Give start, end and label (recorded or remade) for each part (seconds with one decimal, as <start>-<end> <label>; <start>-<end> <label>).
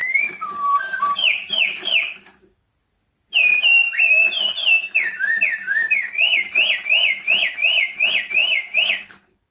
0.0-2.7 remade; 2.7-5.6 recorded; 5.6-6.5 remade; 6.5-8.4 recorded; 8.4-9.5 remade